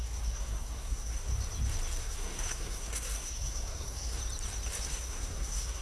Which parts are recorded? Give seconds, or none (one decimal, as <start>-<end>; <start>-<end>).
1.3-2.0; 4.2-4.8